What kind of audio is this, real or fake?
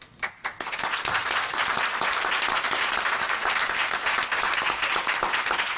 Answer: real